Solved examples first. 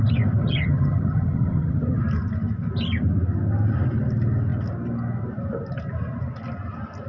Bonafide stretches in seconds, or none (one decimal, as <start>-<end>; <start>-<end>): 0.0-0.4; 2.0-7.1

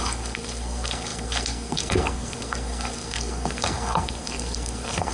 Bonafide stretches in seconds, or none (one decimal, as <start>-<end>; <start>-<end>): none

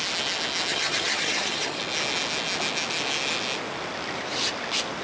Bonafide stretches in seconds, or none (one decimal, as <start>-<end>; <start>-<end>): 0.0-0.7; 1.8-5.0

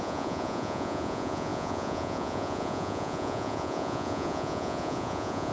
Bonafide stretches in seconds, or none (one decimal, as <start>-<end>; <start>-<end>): none

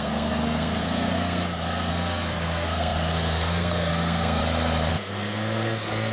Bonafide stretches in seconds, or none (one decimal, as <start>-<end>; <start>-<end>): 1.4-1.9; 4.4-4.9

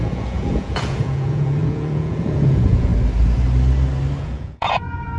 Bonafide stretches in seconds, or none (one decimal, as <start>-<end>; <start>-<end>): 2.9-4.2